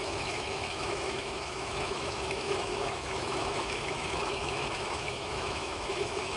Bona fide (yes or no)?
no